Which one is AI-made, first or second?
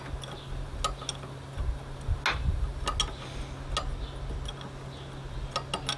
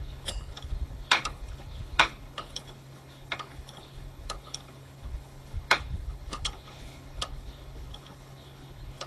second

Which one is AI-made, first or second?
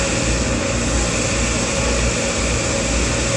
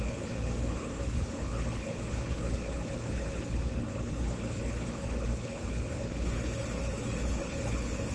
second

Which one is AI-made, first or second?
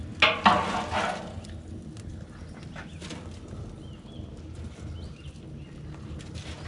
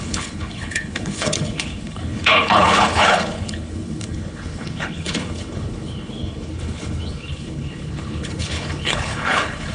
second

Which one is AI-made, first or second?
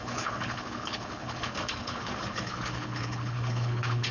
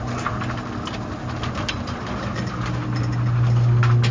first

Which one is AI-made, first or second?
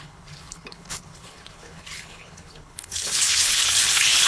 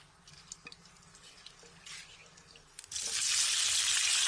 first